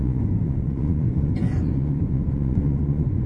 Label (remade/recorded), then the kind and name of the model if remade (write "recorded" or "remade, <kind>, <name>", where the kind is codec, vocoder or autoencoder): remade, vocoder, Vocos